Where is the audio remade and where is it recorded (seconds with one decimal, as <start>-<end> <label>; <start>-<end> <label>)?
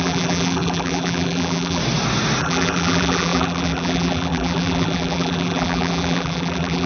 0.0-1.8 remade; 1.8-2.4 recorded; 2.4-6.9 remade